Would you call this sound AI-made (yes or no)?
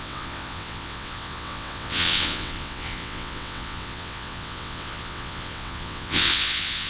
yes